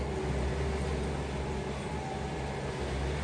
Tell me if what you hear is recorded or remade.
recorded